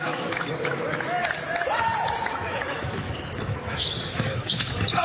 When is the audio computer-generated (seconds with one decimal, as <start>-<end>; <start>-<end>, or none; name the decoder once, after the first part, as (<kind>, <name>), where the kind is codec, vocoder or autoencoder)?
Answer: 0.0-1.2 (autoencoder, DAC-VAE); 2.2-5.0

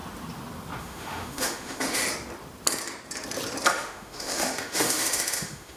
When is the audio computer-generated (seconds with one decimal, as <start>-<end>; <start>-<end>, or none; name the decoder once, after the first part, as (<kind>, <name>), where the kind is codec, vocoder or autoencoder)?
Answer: 0.8-2.0 (autoencoder, DAC-VAE); 3.7-5.8

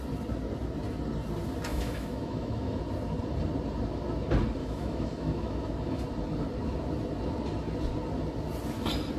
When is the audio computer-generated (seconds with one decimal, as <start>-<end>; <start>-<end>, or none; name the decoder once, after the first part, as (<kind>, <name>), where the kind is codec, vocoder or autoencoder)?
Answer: 1.7-2.8 (autoencoder, DAC-VAE); 4.6-6.0